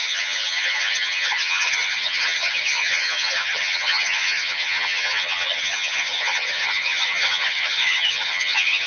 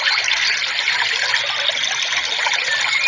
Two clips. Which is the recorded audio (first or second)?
second